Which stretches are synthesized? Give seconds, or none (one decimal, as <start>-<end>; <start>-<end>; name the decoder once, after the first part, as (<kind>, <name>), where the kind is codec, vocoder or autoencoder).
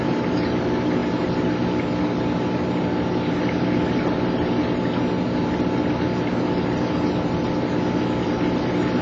none